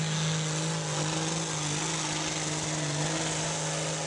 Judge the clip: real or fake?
real